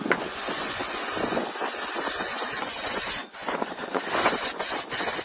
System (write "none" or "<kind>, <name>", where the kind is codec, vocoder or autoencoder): vocoder, Vocos